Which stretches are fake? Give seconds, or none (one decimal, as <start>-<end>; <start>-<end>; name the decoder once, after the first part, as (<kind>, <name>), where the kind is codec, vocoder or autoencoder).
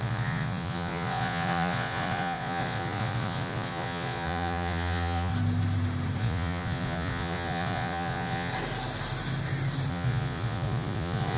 0.0-5.3 (vocoder, Vocos); 6.2-8.5; 9.9-11.4